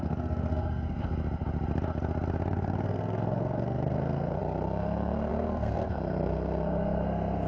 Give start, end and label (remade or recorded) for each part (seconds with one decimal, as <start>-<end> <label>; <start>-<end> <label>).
0.0-1.1 remade; 1.1-2.5 recorded; 2.5-7.5 remade